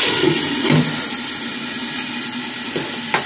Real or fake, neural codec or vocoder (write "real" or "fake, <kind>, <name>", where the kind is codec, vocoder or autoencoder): real